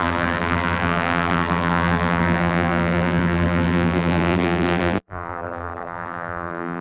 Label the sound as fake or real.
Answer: fake